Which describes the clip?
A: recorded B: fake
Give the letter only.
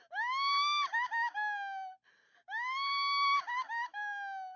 A